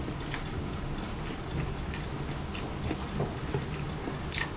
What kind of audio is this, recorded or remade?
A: recorded